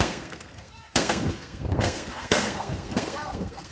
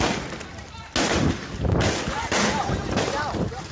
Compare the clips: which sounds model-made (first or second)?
first